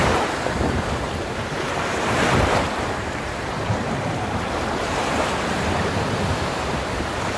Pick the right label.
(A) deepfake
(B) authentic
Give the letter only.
A